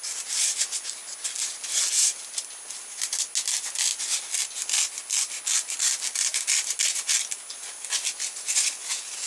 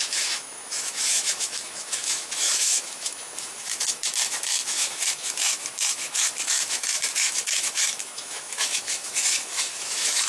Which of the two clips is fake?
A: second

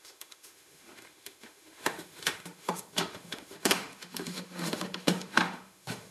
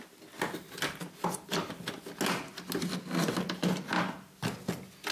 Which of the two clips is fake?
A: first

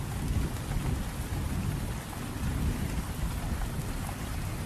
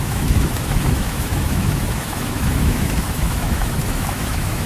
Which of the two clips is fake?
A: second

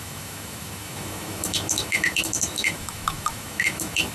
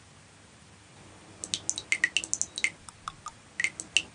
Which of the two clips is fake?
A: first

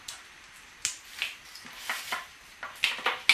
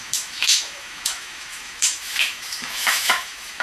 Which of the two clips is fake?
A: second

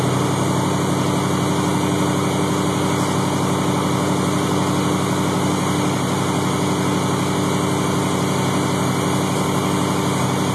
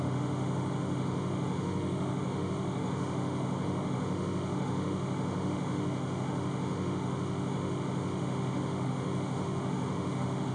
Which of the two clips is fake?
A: second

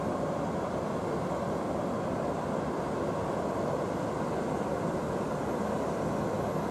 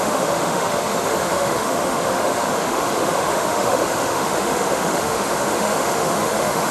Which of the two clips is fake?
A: second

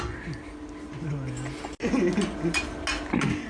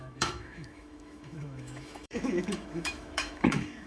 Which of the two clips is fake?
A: second